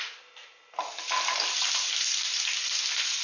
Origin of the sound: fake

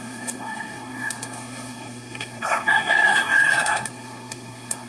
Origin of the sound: fake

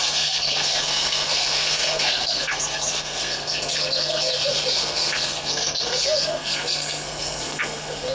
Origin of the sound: fake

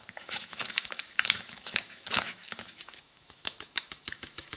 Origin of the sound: fake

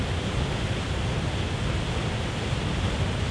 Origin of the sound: real